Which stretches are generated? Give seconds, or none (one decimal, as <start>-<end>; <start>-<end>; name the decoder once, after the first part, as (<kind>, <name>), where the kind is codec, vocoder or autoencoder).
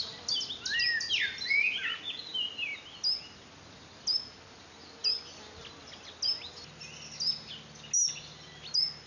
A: none